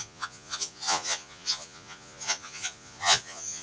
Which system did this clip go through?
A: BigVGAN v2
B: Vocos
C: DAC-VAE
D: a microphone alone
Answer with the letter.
B